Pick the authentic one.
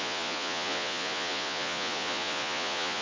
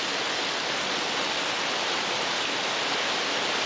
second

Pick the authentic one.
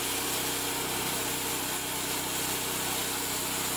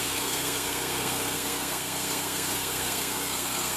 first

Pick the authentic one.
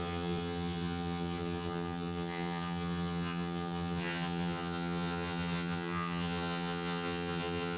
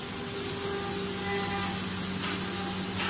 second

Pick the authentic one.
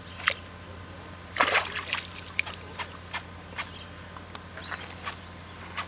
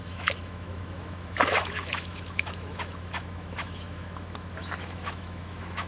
first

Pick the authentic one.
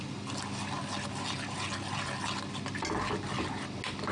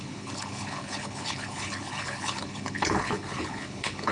first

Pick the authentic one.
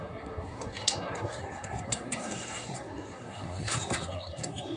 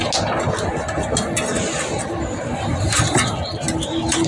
second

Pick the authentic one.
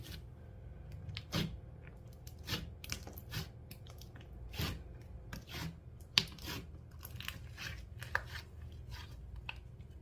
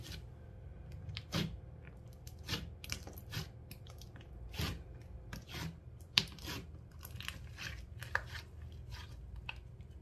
first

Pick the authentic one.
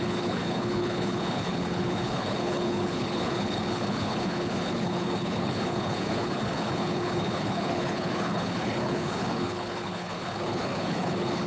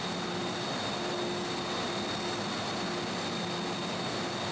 second